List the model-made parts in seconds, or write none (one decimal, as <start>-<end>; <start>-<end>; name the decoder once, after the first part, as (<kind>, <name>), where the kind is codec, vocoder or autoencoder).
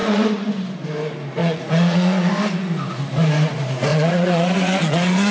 0.0-0.5 (vocoder, Vocos); 1.4-2.3; 3.9-5.3